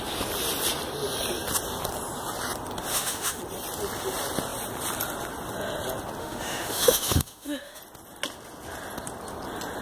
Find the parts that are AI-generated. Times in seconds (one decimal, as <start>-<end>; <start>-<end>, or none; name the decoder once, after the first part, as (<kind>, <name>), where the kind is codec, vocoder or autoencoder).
2.9-3.4 (autoencoder, DAC-VAE); 6.2-7.8